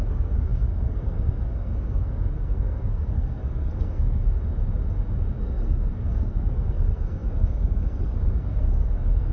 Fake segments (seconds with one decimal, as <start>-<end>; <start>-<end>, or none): 0.0-4.4; 5.4-9.3